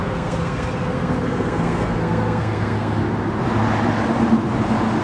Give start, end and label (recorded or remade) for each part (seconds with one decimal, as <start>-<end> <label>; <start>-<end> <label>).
0.0-3.0 remade; 3.0-5.0 recorded